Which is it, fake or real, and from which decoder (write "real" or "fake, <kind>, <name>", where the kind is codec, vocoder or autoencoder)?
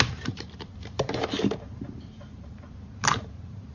fake, vocoder, BigVGAN v2